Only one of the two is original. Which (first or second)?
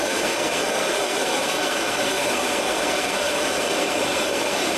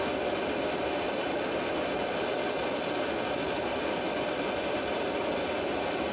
second